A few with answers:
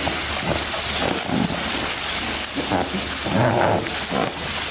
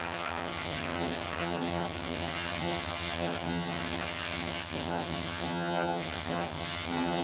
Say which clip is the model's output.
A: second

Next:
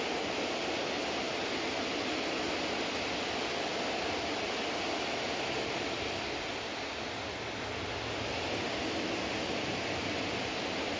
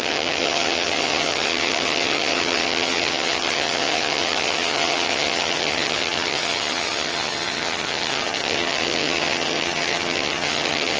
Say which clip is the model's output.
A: second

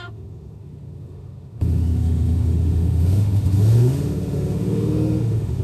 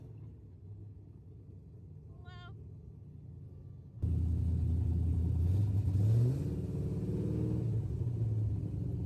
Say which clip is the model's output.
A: first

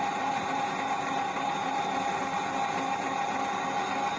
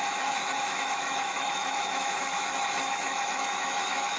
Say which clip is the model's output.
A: second